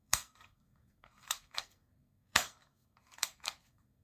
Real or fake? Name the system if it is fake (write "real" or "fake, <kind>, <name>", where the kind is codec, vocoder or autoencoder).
fake, codec, SNAC